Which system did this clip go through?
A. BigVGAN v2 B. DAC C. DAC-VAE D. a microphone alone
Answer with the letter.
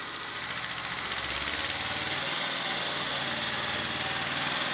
D